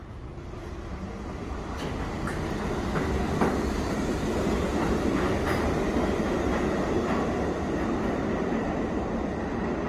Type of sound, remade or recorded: recorded